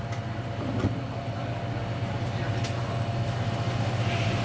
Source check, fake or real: real